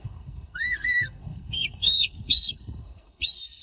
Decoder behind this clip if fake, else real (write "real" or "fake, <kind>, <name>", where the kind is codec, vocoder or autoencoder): fake, codec, SNAC